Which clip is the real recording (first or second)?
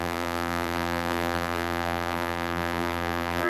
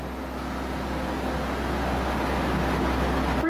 second